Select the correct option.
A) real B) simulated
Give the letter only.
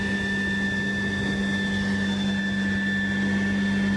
A